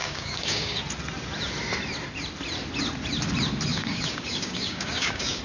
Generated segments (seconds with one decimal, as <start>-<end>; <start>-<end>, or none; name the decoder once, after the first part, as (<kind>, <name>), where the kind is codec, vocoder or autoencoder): 0.0-0.8 (codec, DAC); 3.7-5.4